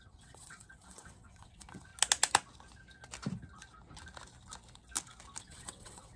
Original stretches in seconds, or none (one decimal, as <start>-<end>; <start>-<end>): 1.9-5.4